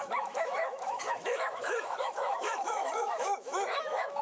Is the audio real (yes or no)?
no